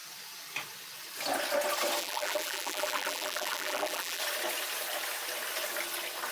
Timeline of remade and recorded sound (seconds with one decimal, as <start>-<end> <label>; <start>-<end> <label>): 0.0-2.0 recorded; 2.0-4.2 remade; 4.2-6.3 recorded

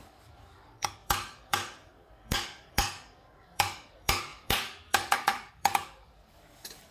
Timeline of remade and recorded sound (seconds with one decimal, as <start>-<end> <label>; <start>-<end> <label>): 0.0-6.9 remade

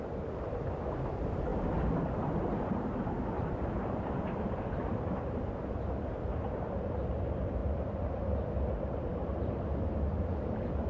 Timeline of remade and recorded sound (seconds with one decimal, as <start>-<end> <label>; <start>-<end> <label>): 0.0-1.5 recorded; 1.5-5.1 remade; 5.1-10.9 recorded

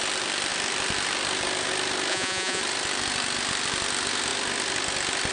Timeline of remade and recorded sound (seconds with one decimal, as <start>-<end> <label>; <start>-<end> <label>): 0.0-2.1 recorded; 2.1-2.6 remade; 2.6-5.3 recorded

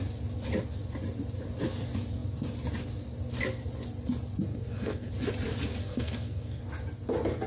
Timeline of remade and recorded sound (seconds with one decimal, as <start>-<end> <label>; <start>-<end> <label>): 0.0-4.5 recorded; 4.5-5.1 remade; 5.1-5.8 recorded; 5.8-6.6 remade; 6.6-7.5 recorded

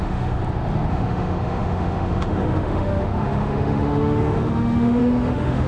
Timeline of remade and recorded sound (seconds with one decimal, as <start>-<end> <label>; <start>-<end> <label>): 0.0-0.4 remade; 0.4-0.9 recorded; 0.9-5.7 remade

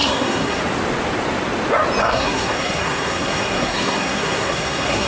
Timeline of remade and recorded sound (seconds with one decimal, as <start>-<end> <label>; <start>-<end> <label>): 0.0-0.6 remade; 0.6-2.0 recorded; 2.0-5.1 remade